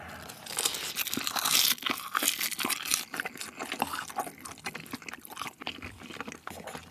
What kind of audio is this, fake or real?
real